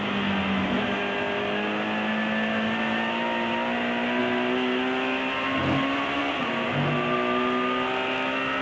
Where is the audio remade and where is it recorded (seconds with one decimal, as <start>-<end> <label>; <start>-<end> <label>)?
0.0-8.6 recorded